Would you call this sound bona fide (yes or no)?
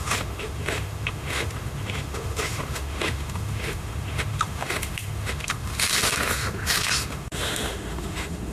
no